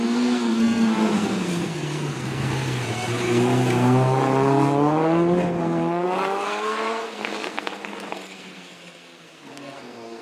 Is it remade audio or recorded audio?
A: remade